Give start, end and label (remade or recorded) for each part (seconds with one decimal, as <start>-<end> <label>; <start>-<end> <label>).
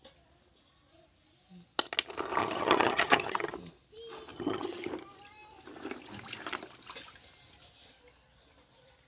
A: 0.0-2.4 recorded; 2.4-3.5 remade; 3.5-4.3 recorded; 4.3-4.9 remade; 4.9-9.1 recorded